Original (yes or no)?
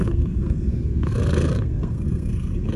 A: no